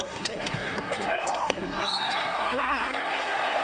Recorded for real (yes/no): no